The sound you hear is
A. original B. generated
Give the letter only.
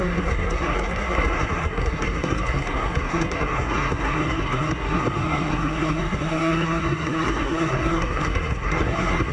B